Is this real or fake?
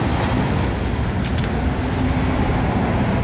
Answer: real